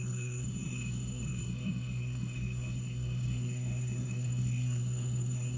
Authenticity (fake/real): fake